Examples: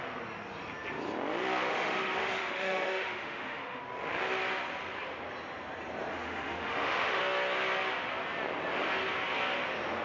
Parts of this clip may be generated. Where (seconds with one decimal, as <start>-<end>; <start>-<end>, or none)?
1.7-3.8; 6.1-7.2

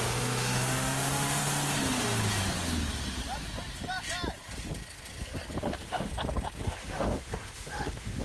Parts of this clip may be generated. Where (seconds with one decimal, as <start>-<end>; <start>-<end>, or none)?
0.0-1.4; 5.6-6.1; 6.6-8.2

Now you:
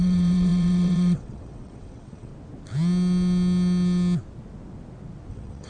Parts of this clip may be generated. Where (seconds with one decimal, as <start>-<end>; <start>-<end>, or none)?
0.0-2.3; 5.3-5.7

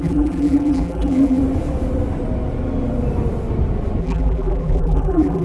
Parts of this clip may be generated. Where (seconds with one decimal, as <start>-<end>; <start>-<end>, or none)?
0.0-1.4; 4.0-5.4

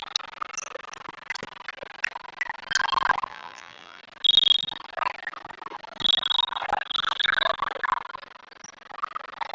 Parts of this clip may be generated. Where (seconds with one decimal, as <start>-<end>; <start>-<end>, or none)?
3.3-4.0

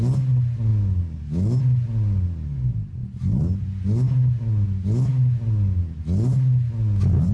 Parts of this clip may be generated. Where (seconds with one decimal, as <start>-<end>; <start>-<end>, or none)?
none